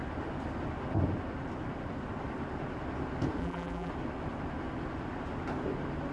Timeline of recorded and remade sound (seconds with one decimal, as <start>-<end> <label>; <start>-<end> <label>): 0.0-3.4 recorded; 3.4-3.9 remade; 3.9-6.1 recorded